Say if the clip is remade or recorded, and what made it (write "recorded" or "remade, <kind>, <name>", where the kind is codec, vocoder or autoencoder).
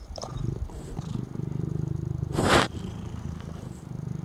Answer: remade, vocoder, BigVGAN v2